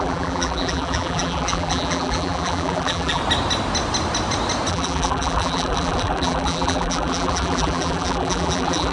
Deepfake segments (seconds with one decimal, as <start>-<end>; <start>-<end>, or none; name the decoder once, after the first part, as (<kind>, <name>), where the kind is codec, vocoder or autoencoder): 0.0-3.2 (vocoder, BigVGAN v2); 4.7-8.9